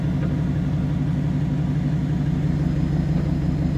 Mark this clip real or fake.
real